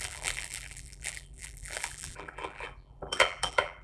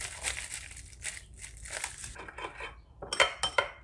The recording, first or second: second